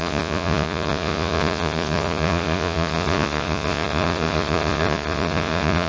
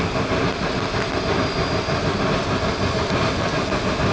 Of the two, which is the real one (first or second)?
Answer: second